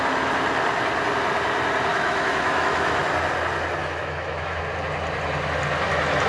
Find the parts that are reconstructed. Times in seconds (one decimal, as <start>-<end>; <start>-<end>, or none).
1.9-3.0; 3.8-4.6